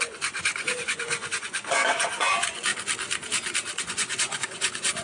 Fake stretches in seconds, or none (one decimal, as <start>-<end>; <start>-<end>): 0.0-2.7; 3.8-5.0